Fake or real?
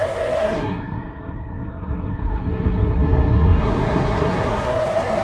fake